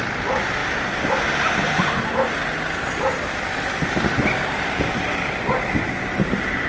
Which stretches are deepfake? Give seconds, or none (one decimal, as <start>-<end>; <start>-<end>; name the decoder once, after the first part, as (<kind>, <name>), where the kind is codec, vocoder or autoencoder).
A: none